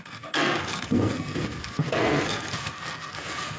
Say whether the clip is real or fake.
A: fake